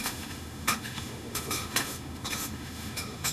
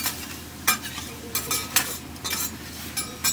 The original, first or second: second